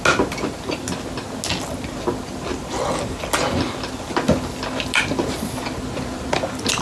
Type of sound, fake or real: real